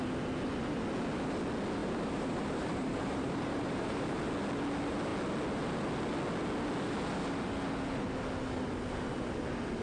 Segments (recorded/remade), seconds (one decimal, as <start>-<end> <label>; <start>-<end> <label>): 0.0-1.8 recorded; 1.8-4.3 remade; 4.3-9.8 recorded